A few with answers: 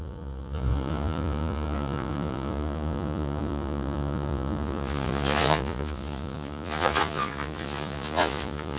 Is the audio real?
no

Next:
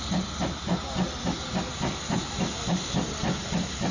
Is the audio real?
yes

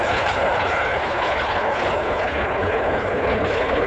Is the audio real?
no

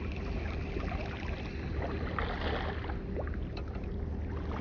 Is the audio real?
yes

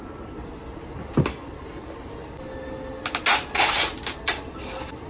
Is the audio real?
yes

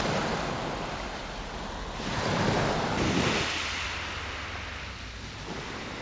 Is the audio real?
yes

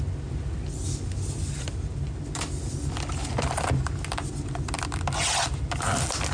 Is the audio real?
yes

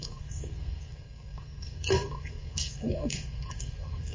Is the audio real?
no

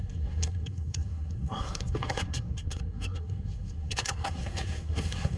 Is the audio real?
no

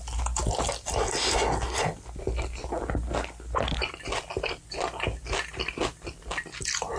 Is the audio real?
yes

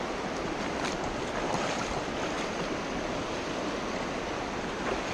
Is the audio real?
yes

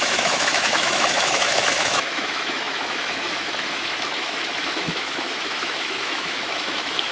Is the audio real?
no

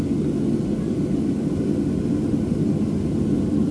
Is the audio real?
yes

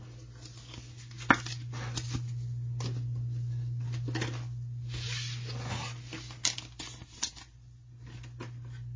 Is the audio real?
yes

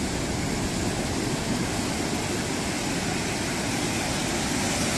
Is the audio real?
yes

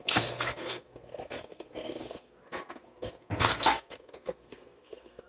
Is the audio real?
no